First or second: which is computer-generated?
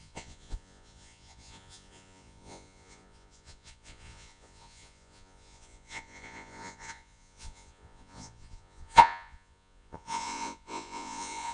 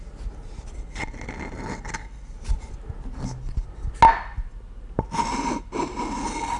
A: first